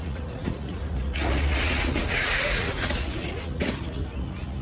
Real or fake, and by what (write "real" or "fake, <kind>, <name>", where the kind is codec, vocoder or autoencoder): fake, vocoder, Vocos